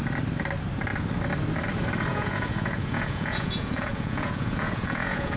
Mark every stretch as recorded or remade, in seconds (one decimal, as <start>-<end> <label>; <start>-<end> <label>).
0.0-2.1 recorded; 2.1-5.4 remade